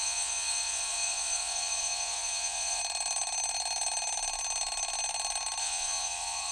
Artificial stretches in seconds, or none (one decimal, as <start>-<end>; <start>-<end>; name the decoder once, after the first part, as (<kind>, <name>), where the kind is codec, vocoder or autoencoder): 0.0-2.8 (vocoder, Vocos); 5.6-6.5